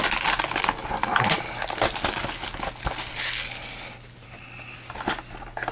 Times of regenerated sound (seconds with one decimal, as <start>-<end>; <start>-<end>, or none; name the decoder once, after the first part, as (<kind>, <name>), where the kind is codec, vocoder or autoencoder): none